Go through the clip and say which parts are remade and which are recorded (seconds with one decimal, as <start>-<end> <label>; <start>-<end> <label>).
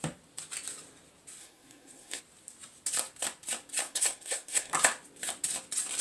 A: 0.0-1.4 recorded; 1.4-2.2 remade; 2.2-3.8 recorded; 3.8-4.7 remade; 4.7-6.0 recorded